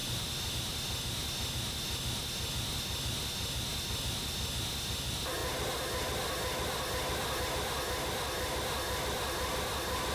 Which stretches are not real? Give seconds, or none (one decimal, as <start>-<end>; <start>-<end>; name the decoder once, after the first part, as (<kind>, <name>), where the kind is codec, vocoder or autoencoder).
none